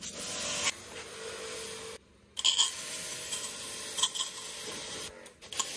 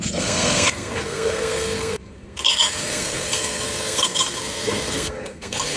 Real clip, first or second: first